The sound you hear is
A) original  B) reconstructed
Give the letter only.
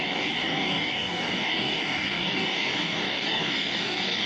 B